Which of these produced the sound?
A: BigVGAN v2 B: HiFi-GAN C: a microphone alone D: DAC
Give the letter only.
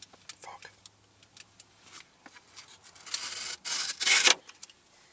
C